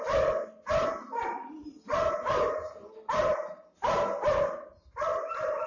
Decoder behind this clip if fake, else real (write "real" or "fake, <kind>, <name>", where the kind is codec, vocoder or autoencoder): real